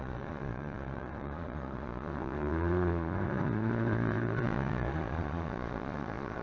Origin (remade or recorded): remade